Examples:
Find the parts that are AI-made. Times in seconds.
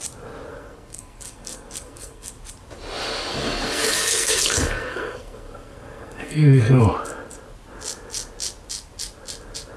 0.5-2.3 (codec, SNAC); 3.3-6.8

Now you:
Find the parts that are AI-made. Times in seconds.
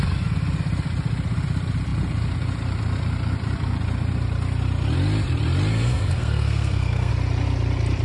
5.7-7.1 (codec, SNAC)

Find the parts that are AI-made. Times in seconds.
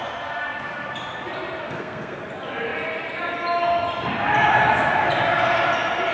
1.6-2.2 (codec, SNAC)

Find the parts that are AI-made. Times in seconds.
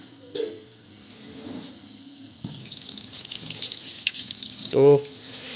0.0-1.1 (codec, SNAC); 1.7-2.6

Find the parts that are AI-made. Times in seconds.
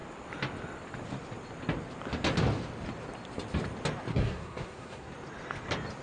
4.1-5.1 (codec, SNAC)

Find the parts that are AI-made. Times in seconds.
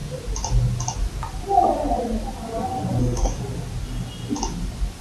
3.0-3.4 (codec, SNAC)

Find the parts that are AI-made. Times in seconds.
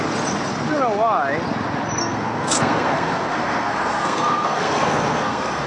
2.0-5.7 (codec, SNAC)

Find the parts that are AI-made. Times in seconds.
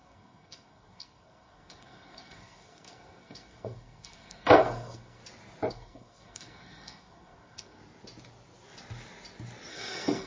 0.0-5.2 (codec, SNAC); 5.7-7.8; 9.7-10.3